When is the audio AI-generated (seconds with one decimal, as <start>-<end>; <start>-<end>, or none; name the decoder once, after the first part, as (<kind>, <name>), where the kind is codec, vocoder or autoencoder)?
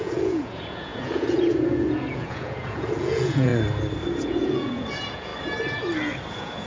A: 0.0-3.5 (vocoder, Vocos); 4.2-5.3; 6.3-6.7